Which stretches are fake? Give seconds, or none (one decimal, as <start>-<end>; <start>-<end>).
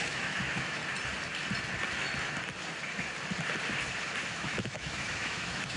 0.0-0.8; 4.3-5.8